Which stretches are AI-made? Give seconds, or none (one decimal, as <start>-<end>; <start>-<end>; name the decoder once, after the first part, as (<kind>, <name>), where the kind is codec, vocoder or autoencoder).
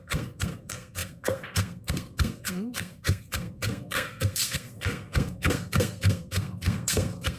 0.0-7.4 (codec, SNAC)